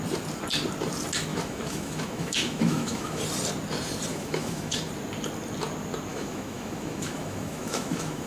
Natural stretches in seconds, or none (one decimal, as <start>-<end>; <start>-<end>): 0.0-1.3; 3.2-4.1; 4.9-6.1